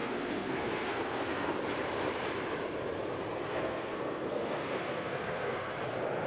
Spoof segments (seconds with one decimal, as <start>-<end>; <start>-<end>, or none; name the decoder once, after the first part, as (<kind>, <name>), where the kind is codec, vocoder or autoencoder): 0.0-1.5 (codec, SNAC); 3.4-5.7